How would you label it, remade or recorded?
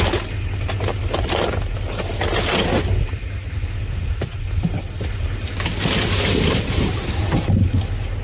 recorded